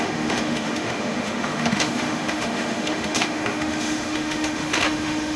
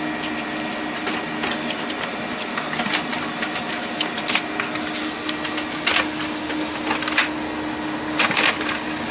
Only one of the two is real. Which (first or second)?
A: second